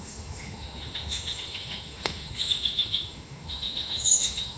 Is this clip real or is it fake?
fake